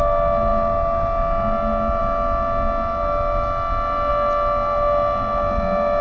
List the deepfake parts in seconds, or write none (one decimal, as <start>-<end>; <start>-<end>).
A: none